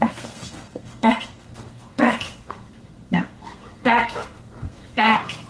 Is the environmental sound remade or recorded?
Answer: remade